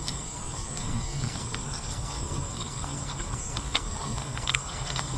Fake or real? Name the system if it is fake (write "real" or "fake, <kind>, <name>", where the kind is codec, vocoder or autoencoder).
fake, codec, SNAC